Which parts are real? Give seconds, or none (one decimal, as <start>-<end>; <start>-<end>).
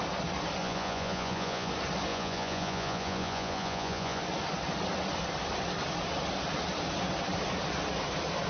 0.0-0.6; 1.7-2.1; 4.2-8.5